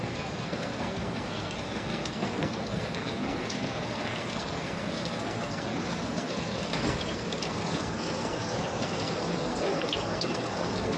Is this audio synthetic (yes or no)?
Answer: yes